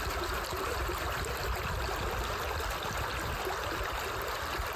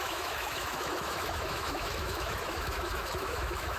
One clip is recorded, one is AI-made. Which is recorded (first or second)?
first